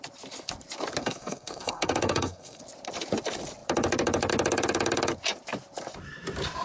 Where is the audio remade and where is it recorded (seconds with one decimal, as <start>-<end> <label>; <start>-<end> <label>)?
0.0-1.0 recorded; 1.0-2.6 remade; 2.6-6.6 recorded